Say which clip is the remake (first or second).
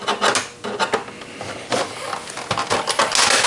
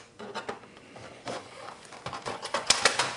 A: second